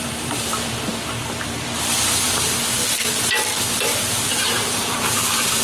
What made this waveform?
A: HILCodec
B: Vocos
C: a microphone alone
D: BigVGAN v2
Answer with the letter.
D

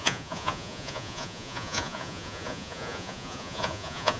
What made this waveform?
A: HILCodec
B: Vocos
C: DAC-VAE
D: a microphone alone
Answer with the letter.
B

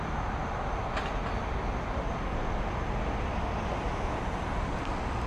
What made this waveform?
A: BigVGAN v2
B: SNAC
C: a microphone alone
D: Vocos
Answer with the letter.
C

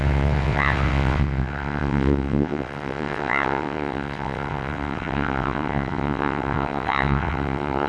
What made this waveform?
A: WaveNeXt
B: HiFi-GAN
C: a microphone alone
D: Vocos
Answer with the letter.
A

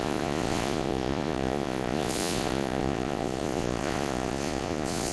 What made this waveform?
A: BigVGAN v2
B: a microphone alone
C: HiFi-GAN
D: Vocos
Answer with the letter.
D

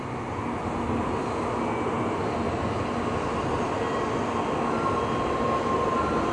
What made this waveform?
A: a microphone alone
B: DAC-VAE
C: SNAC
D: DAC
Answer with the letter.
A